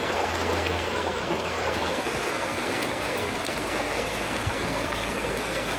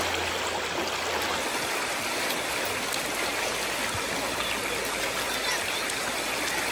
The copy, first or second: first